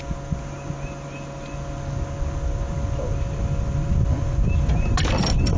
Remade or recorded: recorded